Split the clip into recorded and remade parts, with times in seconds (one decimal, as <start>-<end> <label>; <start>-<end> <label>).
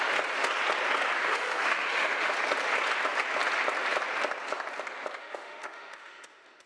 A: 0.0-1.2 recorded; 1.2-2.3 remade; 2.3-5.2 recorded; 5.2-6.7 remade